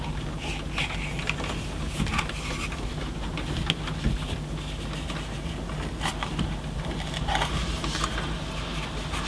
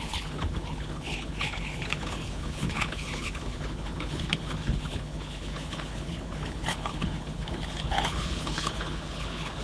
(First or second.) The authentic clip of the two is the first